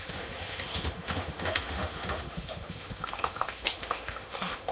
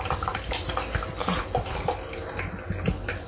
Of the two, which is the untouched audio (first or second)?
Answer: second